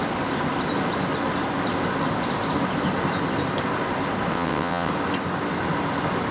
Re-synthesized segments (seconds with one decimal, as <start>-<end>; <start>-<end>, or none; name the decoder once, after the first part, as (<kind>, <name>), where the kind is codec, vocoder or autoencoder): 4.3-4.9 (vocoder, WaveNeXt)